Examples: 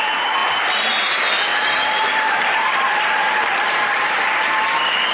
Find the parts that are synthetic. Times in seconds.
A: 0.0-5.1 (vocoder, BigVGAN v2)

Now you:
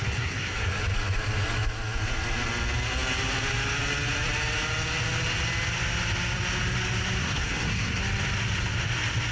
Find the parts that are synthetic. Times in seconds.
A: 0.0-0.7 (codec, SNAC); 7.2-8.0

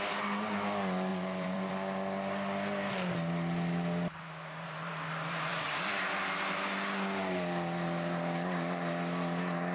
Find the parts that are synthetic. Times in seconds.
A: 1.1-1.7 (vocoder, BigVGAN v2)

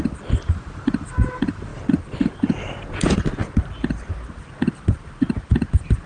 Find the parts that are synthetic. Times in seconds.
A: none

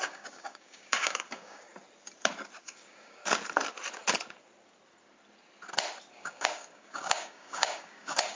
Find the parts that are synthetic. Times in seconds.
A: 0.0-1.7 (codec, DAC); 2.6-3.2; 6.1-8.3

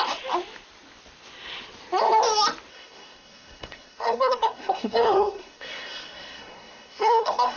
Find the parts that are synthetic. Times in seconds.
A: 2.7-7.6 (codec, SNAC)

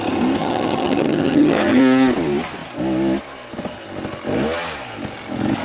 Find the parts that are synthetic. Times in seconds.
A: 0.4-1.8 (vocoder, HiFi-GAN)

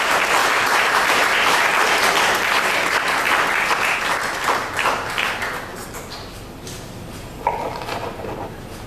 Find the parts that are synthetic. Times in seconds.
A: 0.4-1.6 (vocoder, BigVGAN v2)